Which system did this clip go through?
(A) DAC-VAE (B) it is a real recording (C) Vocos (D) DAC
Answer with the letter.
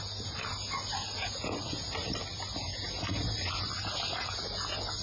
B